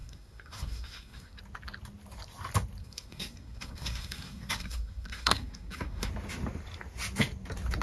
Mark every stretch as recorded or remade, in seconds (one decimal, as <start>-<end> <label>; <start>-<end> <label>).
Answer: 0.0-1.4 remade; 1.4-2.8 recorded; 2.8-6.1 remade; 6.1-7.8 recorded